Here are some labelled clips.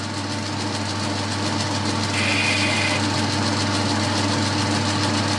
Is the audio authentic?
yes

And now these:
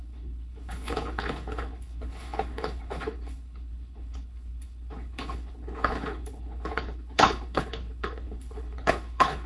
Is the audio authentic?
no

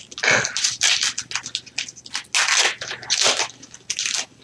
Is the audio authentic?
yes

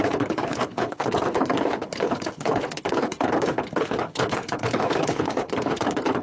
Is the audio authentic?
no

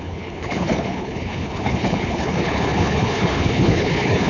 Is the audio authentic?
no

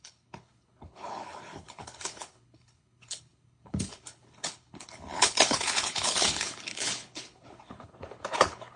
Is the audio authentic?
no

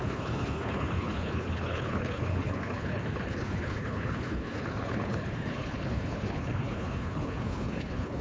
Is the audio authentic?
no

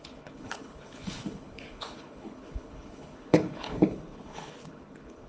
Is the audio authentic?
no